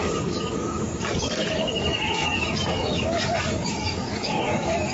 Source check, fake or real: fake